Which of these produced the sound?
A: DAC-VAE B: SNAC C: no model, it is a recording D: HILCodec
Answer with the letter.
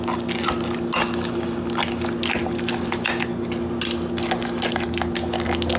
C